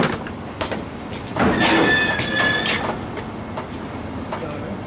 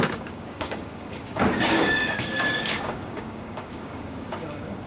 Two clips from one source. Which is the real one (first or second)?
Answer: first